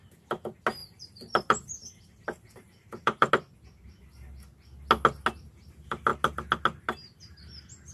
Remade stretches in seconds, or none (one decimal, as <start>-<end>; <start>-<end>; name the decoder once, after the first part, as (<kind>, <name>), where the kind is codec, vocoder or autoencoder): 0.8-3.3 (vocoder, BigVGAN v2)